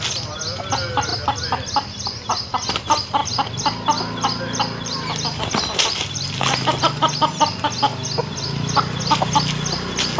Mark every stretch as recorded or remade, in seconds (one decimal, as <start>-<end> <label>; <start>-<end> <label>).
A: 0.0-3.2 recorded; 3.2-6.8 remade; 6.8-10.2 recorded